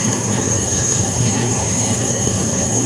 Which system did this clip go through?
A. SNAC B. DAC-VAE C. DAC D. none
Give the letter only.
A